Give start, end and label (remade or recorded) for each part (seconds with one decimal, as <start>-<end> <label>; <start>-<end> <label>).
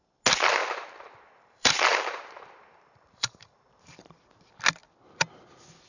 0.0-0.6 recorded; 0.6-4.1 remade; 4.1-5.9 recorded